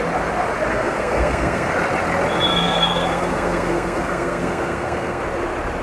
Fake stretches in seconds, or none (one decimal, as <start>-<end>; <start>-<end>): 0.7-1.7; 2.5-5.2